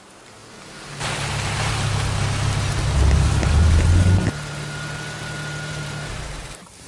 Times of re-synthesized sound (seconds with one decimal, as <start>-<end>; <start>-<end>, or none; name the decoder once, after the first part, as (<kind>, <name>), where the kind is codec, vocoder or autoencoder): 0.0-0.4 (vocoder, BigVGAN v2); 1.3-1.9; 5.7-6.9